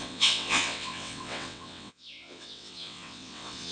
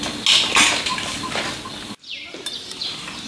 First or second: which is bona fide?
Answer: second